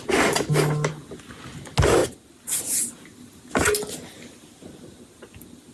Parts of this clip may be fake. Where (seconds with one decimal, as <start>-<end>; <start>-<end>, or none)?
none